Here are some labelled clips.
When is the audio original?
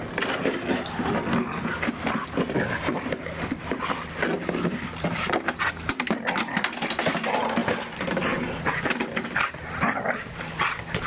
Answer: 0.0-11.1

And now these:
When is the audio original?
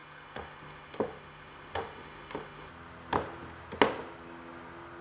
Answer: 2.7-5.0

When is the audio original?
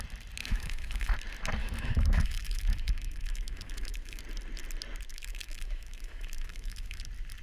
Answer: 0.0-0.4; 1.1-1.6; 4.2-5.1; 7.0-7.4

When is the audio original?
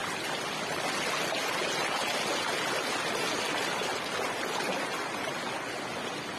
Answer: 0.0-6.4